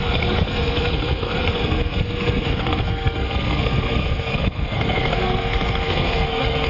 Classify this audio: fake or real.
fake